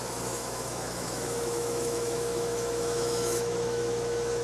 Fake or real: fake